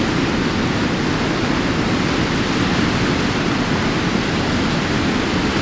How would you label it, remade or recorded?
recorded